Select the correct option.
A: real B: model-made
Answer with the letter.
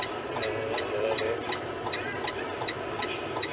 A